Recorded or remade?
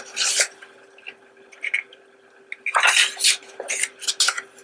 recorded